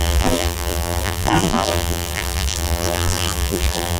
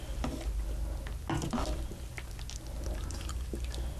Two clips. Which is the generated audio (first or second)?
first